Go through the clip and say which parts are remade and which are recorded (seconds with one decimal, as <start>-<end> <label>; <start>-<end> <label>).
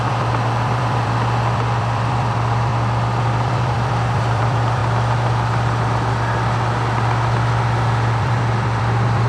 0.0-2.7 remade; 2.7-3.2 recorded; 3.2-4.8 remade; 4.8-8.2 recorded; 8.2-9.3 remade